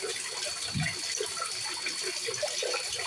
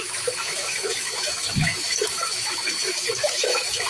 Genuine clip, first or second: first